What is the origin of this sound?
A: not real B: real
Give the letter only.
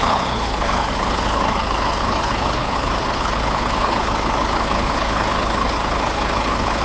A